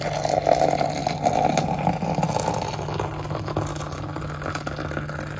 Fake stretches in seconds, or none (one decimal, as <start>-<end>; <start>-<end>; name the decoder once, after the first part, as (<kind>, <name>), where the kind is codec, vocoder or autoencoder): none